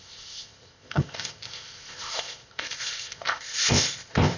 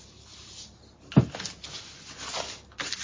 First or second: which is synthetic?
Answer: first